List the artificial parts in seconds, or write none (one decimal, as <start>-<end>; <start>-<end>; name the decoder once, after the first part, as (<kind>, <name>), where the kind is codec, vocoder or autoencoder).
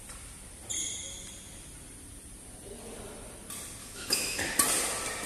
3.8-4.5 (autoencoder, DAC-VAE)